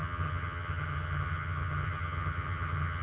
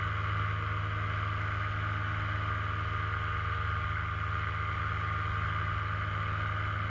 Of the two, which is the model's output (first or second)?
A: first